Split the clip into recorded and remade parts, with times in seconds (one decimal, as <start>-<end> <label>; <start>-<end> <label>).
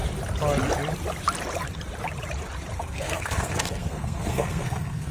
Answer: 0.0-2.8 recorded; 2.8-5.1 remade